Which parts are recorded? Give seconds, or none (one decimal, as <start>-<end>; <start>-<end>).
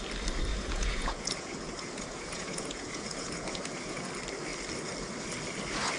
0.0-0.5; 4.1-6.0